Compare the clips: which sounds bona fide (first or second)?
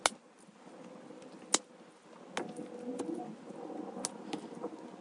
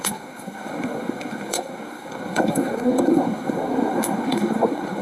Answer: first